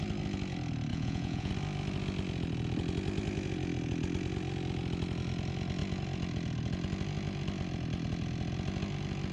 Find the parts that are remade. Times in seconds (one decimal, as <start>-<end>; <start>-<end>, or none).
0.9-1.5